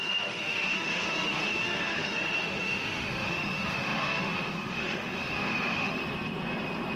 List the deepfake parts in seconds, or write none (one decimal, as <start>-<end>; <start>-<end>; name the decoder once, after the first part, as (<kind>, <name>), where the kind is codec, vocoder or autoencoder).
0.0-6.0 (autoencoder, DAC-VAE)